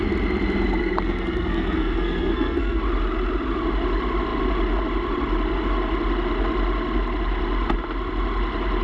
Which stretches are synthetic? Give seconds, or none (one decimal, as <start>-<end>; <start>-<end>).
0.8-2.8

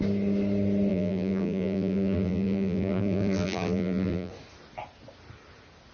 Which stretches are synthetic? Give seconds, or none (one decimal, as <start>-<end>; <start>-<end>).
0.9-4.3

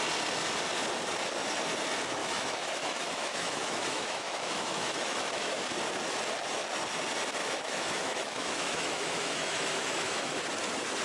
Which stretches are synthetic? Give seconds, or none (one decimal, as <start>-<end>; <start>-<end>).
2.2-5.5; 7.4-10.4